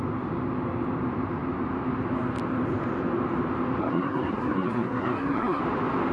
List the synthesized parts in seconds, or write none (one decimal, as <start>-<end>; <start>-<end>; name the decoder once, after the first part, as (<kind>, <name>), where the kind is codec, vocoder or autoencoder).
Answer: 3.8-5.6 (codec, SNAC)